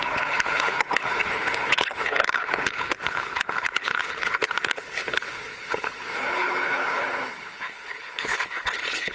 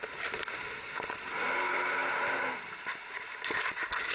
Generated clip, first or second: first